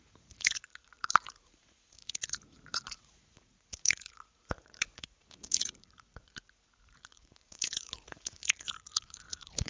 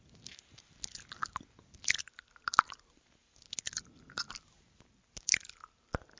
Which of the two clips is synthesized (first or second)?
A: first